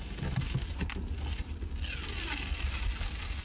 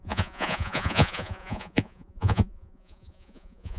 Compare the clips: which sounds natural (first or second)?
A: first